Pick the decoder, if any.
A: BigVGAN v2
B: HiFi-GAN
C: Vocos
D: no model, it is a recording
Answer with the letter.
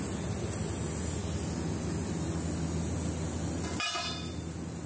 D